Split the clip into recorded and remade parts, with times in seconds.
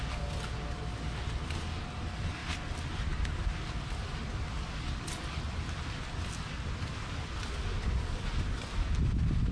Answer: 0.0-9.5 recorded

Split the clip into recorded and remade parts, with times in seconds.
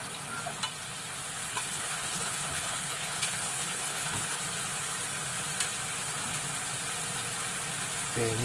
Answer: 0.0-1.5 recorded; 1.5-4.4 remade; 4.4-8.4 recorded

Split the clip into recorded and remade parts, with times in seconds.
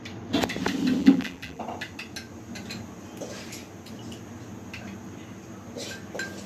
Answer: 0.0-1.0 recorded; 1.0-1.6 remade; 1.6-6.5 recorded